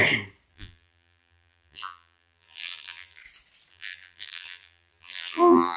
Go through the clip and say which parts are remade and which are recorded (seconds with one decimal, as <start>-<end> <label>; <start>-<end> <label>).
0.0-0.5 recorded; 0.5-3.2 remade; 3.2-3.7 recorded; 3.7-5.8 remade